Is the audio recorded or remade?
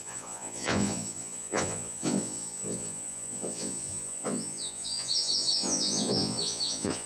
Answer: remade